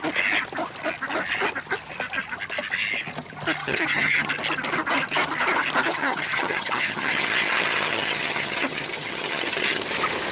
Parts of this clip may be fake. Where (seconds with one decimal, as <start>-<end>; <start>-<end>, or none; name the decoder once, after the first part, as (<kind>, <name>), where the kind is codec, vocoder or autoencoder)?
3.6-4.3 (vocoder, HiFi-GAN); 5.9-9.8